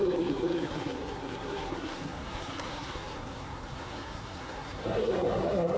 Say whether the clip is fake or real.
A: fake